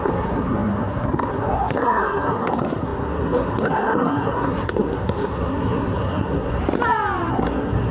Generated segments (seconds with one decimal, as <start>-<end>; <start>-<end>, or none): 0.0-6.6; 7.3-7.9